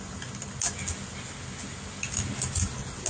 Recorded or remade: recorded